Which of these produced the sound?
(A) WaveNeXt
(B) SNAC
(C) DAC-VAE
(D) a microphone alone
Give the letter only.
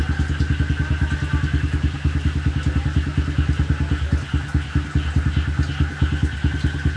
D